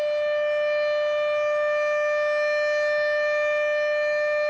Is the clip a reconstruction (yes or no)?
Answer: no